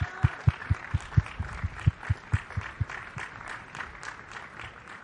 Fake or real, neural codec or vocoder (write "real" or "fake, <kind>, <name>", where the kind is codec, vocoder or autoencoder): real